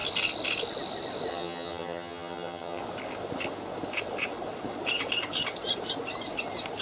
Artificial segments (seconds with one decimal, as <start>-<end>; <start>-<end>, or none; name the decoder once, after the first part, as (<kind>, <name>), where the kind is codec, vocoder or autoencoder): 1.3-2.8 (vocoder, HiFi-GAN)